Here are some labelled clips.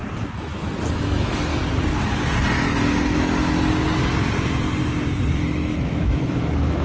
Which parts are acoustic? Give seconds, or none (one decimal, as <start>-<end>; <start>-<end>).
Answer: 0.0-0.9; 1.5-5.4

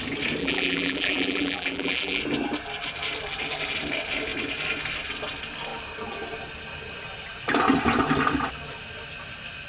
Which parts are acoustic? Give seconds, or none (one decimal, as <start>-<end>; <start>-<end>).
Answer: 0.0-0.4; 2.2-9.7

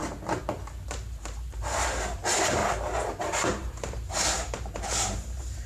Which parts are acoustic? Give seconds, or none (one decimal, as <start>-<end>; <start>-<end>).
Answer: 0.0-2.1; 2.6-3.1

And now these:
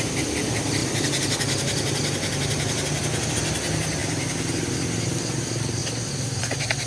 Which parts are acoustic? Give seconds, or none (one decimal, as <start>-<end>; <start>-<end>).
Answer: 0.0-6.9

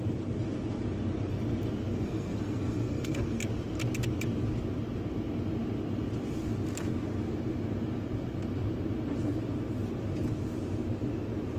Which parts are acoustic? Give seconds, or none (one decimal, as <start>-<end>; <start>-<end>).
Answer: 0.0-1.9; 3.4-11.6

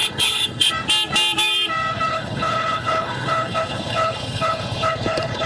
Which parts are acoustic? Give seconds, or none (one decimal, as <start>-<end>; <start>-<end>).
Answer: 0.7-2.1

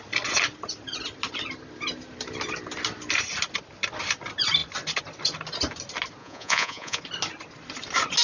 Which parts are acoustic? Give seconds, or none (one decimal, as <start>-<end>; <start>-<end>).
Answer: 0.0-6.2; 7.0-8.2